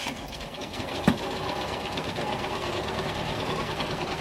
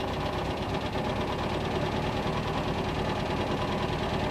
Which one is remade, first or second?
first